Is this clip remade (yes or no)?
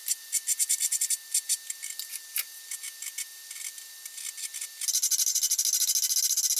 no